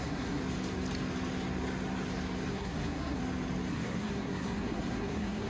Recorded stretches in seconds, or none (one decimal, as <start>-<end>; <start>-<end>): 0.4-2.5; 3.2-3.7